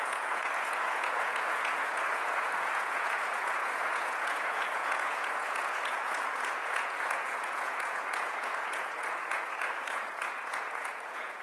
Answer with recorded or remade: remade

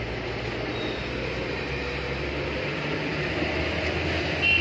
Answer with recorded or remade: recorded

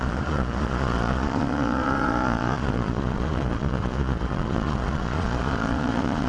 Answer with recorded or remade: remade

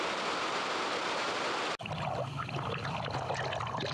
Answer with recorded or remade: recorded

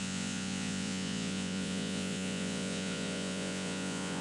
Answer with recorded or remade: remade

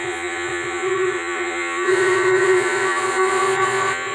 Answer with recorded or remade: remade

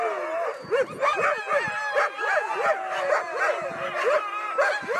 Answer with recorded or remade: recorded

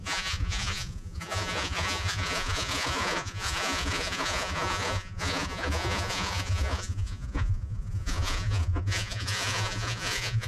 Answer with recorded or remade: remade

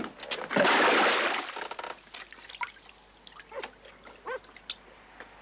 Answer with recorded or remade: recorded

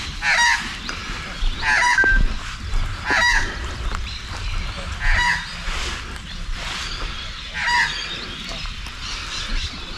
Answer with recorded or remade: recorded